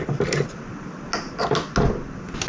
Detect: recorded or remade recorded